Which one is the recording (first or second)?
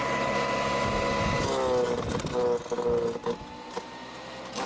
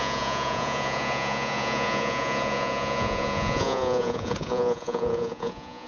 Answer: first